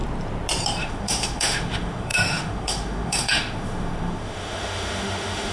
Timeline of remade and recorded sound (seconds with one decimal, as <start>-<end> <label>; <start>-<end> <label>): 0.0-0.8 recorded; 0.8-5.5 remade